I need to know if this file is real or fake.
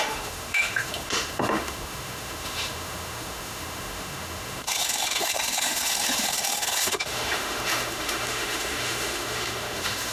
fake